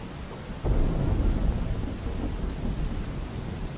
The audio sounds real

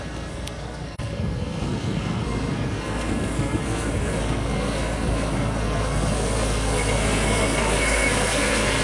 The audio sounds fake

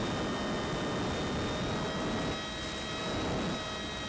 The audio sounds real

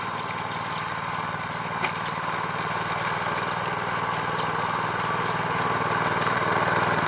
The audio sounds fake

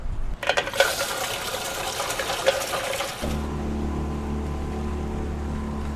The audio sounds real